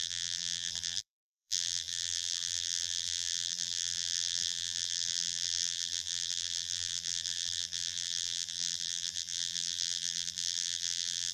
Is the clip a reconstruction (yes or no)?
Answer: yes